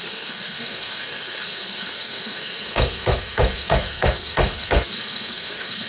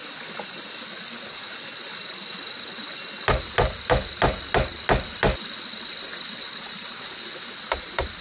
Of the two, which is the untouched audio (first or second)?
second